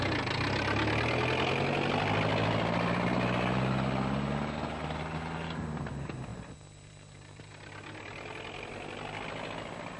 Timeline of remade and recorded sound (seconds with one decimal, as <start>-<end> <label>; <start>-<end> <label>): 0.0-6.3 recorded; 6.3-7.5 remade; 7.5-10.0 recorded